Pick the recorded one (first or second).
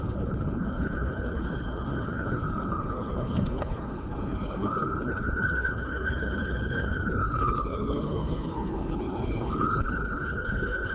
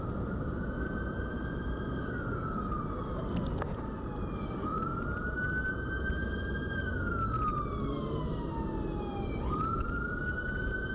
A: second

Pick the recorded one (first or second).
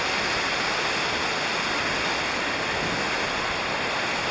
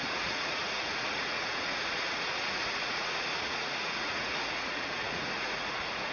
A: first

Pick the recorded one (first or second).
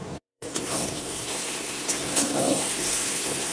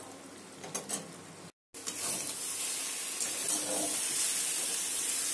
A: second